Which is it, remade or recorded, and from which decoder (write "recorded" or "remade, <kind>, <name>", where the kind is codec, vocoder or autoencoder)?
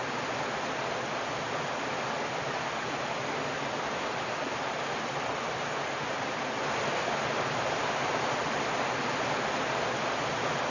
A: recorded